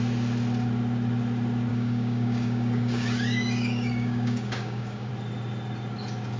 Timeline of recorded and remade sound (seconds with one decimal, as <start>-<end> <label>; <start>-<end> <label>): 0.0-1.7 recorded; 1.7-5.1 remade; 5.1-6.4 recorded